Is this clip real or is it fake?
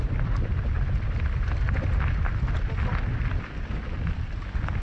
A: real